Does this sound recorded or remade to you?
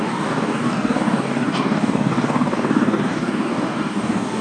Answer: remade